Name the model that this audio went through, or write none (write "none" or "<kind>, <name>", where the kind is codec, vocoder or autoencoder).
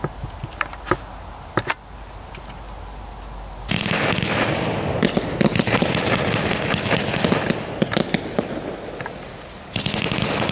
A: none